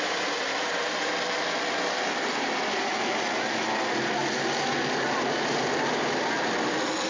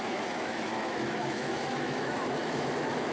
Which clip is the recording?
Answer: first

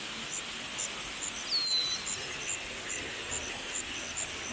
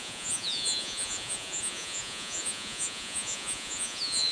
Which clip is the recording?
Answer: first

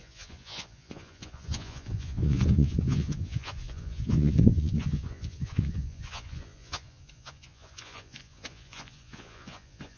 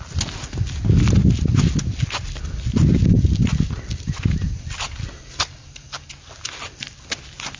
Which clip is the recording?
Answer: second